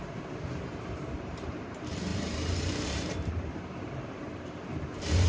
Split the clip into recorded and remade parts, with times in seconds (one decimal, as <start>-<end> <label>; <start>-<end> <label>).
0.0-0.8 recorded; 0.8-5.3 remade